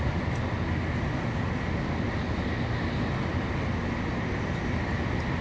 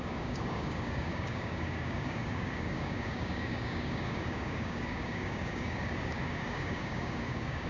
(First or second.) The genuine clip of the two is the first